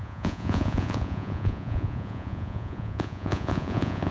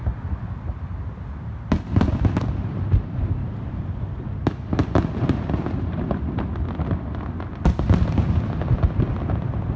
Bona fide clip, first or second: second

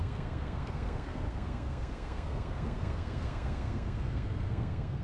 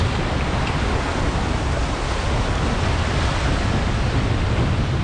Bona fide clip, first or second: second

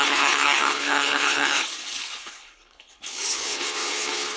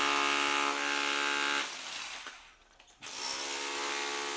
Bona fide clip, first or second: second